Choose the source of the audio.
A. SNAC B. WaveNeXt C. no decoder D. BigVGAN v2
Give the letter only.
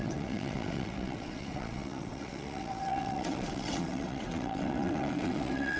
B